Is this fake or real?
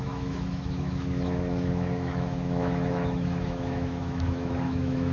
fake